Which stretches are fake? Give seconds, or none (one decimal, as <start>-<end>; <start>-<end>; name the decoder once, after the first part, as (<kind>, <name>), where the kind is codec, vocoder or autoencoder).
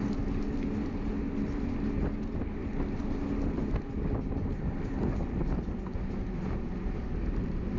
none